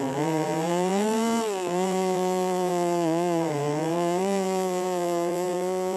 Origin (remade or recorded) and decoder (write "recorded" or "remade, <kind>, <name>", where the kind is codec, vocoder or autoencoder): remade, vocoder, BigVGAN v2